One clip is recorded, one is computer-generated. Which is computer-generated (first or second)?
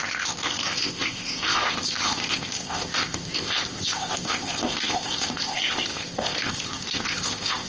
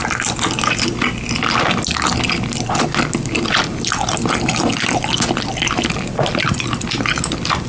first